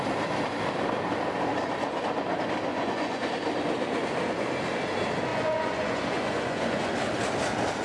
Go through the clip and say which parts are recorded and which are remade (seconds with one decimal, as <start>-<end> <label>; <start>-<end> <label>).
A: 0.0-2.7 recorded; 2.7-3.2 remade; 3.2-5.3 recorded; 5.3-6.9 remade; 6.9-7.8 recorded